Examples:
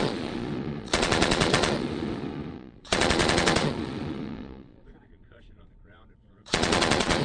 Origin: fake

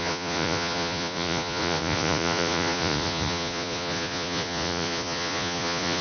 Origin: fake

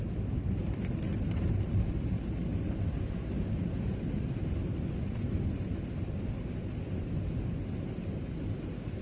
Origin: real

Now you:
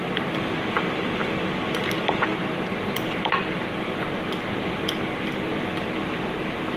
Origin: real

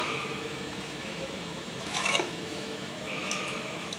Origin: fake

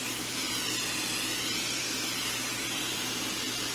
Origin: real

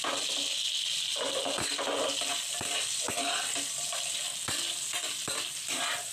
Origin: real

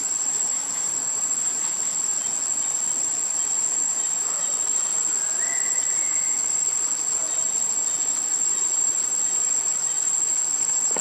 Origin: real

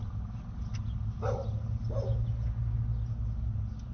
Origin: real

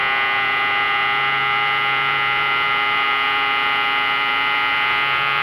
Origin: fake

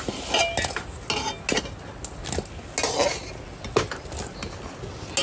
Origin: real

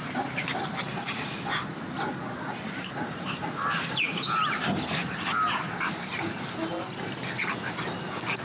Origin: real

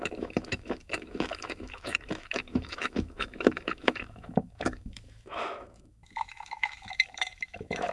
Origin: fake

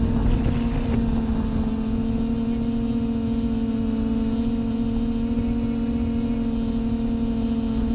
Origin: real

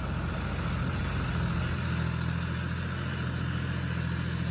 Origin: real